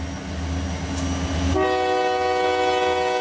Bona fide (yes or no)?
yes